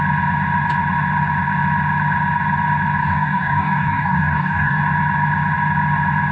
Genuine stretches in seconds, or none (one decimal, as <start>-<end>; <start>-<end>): 0.0-3.0; 4.8-6.3